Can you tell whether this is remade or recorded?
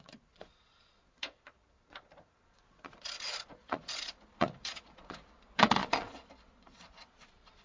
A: remade